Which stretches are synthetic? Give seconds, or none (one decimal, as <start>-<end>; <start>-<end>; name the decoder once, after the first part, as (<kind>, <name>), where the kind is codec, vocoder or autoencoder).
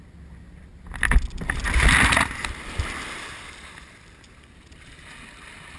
none